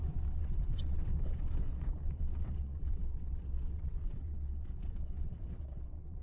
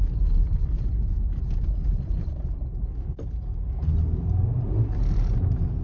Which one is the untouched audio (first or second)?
second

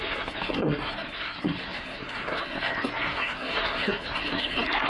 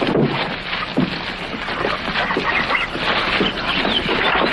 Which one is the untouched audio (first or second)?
second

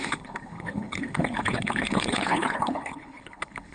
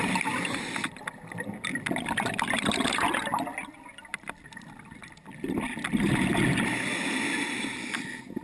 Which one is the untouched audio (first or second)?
second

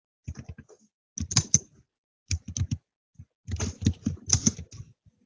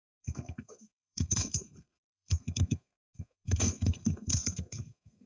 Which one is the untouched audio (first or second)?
first